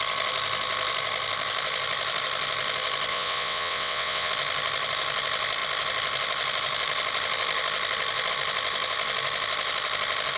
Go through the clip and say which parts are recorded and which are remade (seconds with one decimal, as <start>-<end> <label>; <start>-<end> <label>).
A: 0.0-3.1 recorded; 3.1-4.3 remade; 4.3-10.4 recorded